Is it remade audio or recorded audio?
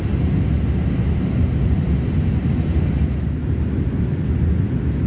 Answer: recorded